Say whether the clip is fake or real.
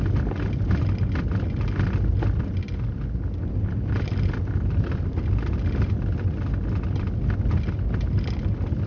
real